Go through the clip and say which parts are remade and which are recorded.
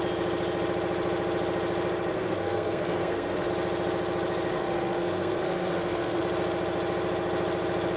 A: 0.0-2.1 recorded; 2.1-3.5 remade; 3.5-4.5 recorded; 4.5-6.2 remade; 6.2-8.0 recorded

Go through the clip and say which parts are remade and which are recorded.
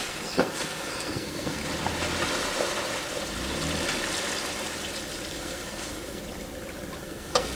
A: 0.0-1.6 remade; 1.6-5.3 recorded; 5.3-6.2 remade; 6.2-7.0 recorded; 7.0-7.5 remade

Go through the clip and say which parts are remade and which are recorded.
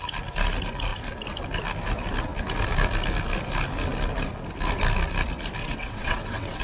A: 0.0-5.6 recorded; 5.6-6.6 remade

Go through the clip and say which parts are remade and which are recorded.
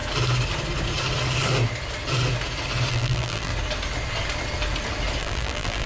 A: 0.0-2.9 recorded; 2.9-3.5 remade; 3.5-5.2 recorded; 5.2-5.9 remade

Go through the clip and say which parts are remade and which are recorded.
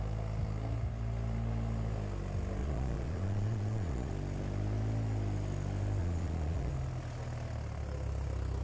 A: 0.0-2.6 recorded; 2.6-4.1 remade; 4.1-6.0 recorded; 6.0-6.7 remade; 6.7-8.6 recorded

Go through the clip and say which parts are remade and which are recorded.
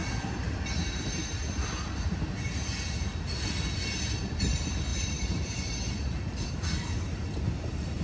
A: 0.0-8.0 recorded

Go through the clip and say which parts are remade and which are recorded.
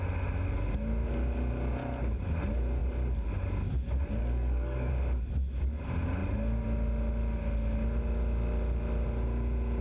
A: 0.0-4.2 recorded; 4.2-4.9 remade; 4.9-9.8 recorded